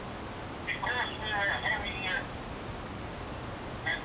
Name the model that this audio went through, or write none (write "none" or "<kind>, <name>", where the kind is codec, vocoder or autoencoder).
none